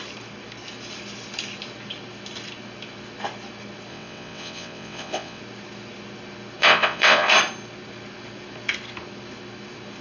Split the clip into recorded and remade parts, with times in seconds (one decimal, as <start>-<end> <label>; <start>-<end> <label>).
0.0-3.9 recorded; 3.9-5.4 remade; 5.4-6.6 recorded; 6.6-7.3 remade; 7.3-10.0 recorded